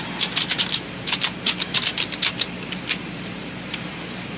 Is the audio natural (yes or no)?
yes